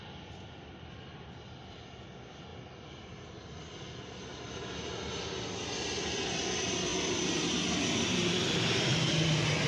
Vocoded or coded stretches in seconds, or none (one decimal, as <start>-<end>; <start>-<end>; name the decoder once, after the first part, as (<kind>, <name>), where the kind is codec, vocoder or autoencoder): none